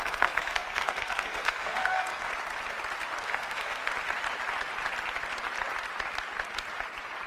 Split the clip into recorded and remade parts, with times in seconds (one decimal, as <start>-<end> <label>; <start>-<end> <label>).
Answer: 0.0-2.3 remade; 2.3-3.2 recorded; 3.2-3.9 remade; 3.9-7.3 recorded

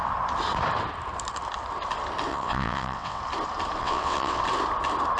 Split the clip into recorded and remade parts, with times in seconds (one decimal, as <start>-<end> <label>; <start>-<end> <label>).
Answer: 0.0-2.3 recorded; 2.3-3.2 remade; 3.2-3.8 recorded; 3.8-4.4 remade; 4.4-5.2 recorded

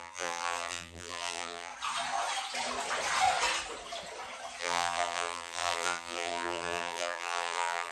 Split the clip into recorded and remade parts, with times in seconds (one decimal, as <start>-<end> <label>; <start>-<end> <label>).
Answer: 0.0-1.7 remade; 1.7-4.6 recorded; 4.6-7.9 remade

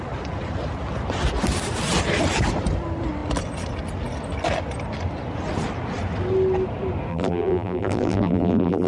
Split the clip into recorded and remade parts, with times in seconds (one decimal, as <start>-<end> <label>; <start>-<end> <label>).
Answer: 0.0-7.1 recorded; 7.1-8.9 remade

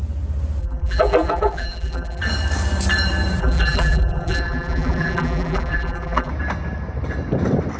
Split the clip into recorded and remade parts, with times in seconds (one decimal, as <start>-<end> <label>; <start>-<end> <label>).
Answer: 0.0-0.6 recorded; 0.6-2.2 remade; 2.2-3.4 recorded; 3.4-6.3 remade; 6.3-7.8 recorded

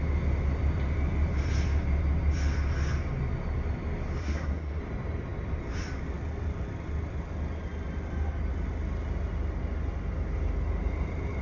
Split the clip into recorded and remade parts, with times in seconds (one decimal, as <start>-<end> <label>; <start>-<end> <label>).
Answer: 0.0-4.2 recorded; 4.2-4.8 remade; 4.8-11.4 recorded

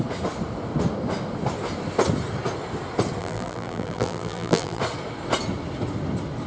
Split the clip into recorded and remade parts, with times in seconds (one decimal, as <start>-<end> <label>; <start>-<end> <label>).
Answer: 0.0-3.2 recorded; 3.2-4.8 remade; 4.8-6.5 recorded